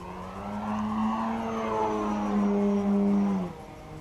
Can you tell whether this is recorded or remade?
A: recorded